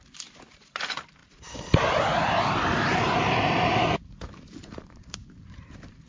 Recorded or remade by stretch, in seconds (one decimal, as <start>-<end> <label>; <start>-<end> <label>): 0.0-6.1 remade